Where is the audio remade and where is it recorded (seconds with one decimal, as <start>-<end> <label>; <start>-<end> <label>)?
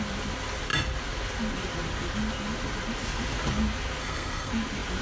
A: 0.0-4.0 recorded; 4.0-4.5 remade; 4.5-5.0 recorded